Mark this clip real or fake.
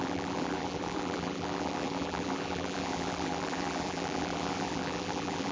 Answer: fake